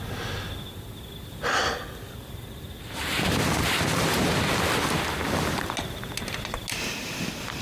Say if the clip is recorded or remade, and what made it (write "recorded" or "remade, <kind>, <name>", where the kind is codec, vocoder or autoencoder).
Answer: recorded